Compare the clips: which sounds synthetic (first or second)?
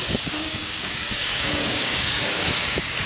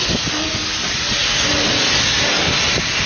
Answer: first